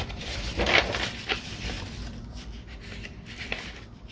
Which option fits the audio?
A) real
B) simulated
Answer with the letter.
B